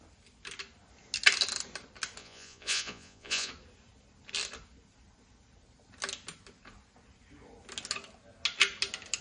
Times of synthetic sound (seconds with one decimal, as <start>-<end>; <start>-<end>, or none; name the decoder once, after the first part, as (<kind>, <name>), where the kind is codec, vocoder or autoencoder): 2.2-3.5 (vocoder, Vocos)